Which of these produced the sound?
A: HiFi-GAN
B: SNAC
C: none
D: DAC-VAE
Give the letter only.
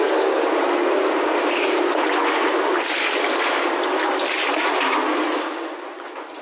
C